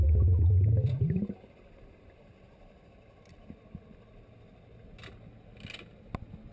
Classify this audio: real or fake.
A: real